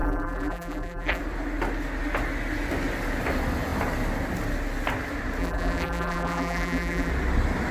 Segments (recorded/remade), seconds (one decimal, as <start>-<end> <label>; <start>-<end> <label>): 0.0-1.2 remade; 1.2-5.4 recorded; 5.4-7.1 remade; 7.1-7.7 recorded